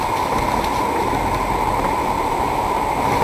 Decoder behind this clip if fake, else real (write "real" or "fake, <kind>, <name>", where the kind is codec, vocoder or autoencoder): real